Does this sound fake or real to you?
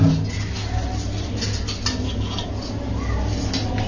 real